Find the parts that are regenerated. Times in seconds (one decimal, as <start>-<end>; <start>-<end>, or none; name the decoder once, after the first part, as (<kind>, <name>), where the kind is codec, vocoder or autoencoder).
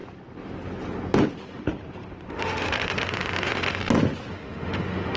2.3-3.8 (autoencoder, DAC-VAE); 4.3-5.2